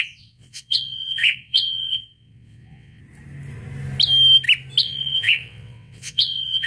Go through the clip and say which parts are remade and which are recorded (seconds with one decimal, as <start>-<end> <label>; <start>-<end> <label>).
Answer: 0.0-3.0 remade; 3.0-4.8 recorded; 4.8-6.7 remade